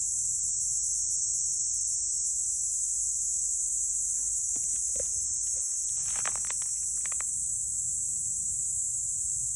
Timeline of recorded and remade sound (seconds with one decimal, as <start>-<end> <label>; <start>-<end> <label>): 0.0-9.6 recorded